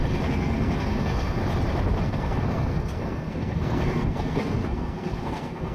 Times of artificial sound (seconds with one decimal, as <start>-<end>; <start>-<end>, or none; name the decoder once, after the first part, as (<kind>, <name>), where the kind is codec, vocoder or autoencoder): 0.0-1.4 (codec, SNAC); 2.0-5.7